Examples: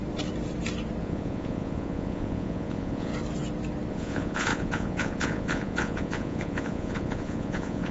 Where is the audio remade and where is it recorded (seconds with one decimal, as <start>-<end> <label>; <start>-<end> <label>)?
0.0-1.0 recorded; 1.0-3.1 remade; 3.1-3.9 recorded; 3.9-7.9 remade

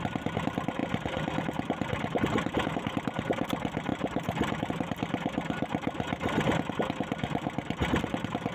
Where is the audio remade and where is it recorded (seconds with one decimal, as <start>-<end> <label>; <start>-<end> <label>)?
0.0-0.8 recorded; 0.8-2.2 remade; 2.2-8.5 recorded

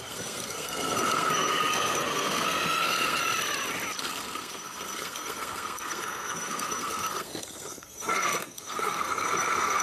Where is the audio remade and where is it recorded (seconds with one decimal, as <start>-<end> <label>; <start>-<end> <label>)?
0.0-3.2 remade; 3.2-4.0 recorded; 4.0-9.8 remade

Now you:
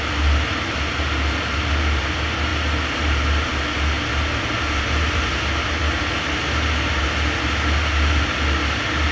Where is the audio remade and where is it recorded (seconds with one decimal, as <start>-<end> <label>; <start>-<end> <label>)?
0.0-9.1 recorded

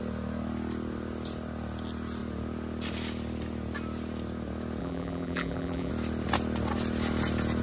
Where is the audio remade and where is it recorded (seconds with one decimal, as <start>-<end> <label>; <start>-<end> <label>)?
0.0-4.8 recorded; 4.8-5.9 remade; 5.9-7.6 recorded

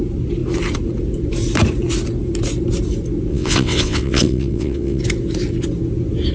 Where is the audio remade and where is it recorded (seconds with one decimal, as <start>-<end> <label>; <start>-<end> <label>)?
0.0-3.3 recorded; 3.3-5.0 remade; 5.0-6.3 recorded

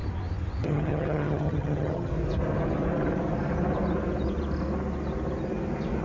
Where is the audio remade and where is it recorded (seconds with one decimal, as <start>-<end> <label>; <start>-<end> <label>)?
0.0-0.6 recorded; 0.6-2.1 remade; 2.1-6.0 recorded

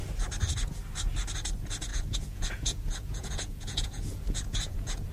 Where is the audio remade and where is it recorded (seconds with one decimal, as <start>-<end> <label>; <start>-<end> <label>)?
0.0-1.9 recorded; 1.9-5.1 remade